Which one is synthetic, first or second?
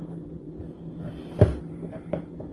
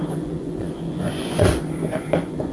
second